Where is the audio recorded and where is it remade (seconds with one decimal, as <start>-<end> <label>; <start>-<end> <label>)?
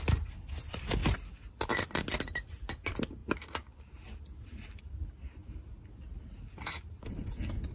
0.0-1.0 recorded; 1.0-2.0 remade; 2.0-7.7 recorded